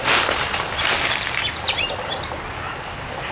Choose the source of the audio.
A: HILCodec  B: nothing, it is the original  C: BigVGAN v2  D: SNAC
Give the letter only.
B